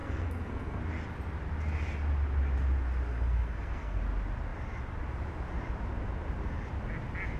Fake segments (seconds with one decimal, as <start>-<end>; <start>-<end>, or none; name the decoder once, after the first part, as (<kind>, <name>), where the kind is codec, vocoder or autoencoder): 0.0-0.8 (codec, SNAC); 3.1-4.0